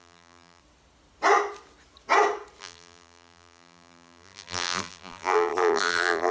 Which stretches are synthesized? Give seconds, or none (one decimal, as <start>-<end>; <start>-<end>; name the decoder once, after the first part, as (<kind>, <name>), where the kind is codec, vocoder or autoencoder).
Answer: 0.0-0.6 (vocoder, BigVGAN v2); 2.6-6.3